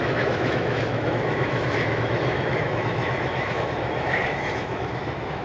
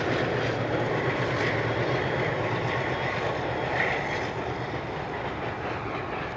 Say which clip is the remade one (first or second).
first